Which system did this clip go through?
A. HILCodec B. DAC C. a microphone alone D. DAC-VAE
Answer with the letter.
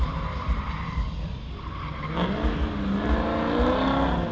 C